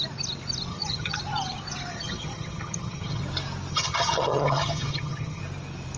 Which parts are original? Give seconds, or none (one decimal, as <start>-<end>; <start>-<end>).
0.0-0.7; 1.2-1.9; 3.2-3.7; 5.4-6.0